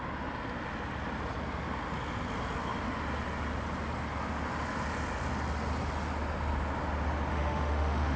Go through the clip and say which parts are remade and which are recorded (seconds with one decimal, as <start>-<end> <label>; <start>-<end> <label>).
0.0-7.3 recorded; 7.3-8.2 remade